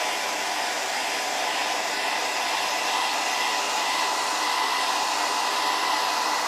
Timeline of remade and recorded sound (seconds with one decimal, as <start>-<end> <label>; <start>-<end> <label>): 0.0-6.5 remade